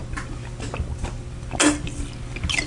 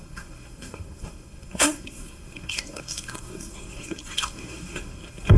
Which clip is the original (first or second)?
first